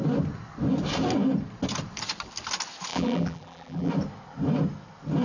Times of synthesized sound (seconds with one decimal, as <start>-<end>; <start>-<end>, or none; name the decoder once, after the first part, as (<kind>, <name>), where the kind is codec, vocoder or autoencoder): 2.9-3.9 (vocoder, BigVGAN v2)